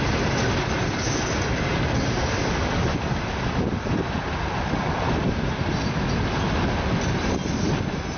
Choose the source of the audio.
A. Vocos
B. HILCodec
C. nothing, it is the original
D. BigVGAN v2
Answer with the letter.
C